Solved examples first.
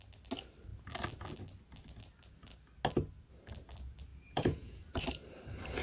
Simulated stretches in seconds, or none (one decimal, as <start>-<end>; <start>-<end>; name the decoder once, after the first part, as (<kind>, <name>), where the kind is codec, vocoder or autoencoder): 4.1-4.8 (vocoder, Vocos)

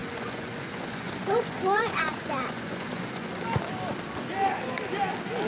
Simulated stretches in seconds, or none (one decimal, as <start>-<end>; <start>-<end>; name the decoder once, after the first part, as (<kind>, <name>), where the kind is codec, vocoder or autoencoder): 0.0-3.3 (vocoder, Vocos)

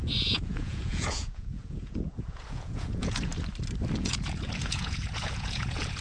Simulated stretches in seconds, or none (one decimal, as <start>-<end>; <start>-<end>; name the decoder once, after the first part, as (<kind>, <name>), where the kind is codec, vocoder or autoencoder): 0.0-3.3 (vocoder, Vocos); 4.0-6.0